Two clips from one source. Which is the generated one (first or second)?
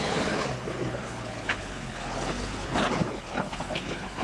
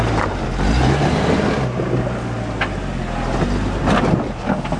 first